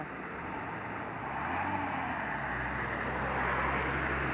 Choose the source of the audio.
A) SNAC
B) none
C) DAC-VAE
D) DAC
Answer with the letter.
B